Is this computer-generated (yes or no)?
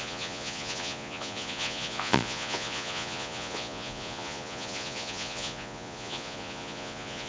yes